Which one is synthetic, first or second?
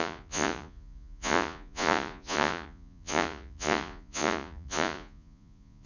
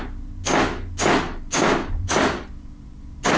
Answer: first